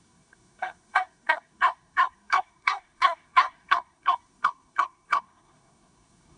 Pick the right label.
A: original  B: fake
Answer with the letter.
B